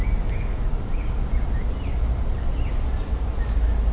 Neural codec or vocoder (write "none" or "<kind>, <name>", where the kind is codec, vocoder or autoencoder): none